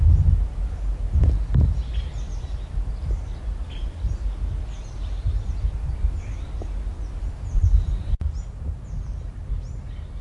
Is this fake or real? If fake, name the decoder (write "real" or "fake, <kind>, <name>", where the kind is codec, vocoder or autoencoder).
real